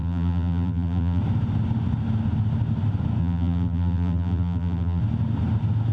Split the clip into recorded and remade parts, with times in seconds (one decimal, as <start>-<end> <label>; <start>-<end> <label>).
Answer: 0.0-1.2 remade; 1.2-3.2 recorded; 3.2-5.0 remade; 5.0-5.9 recorded